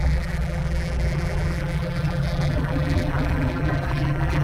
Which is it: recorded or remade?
remade